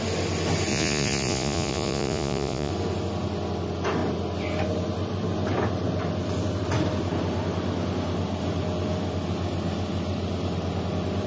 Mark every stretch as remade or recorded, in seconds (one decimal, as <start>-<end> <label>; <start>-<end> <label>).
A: 0.0-0.7 recorded; 0.7-2.7 remade; 2.7-11.3 recorded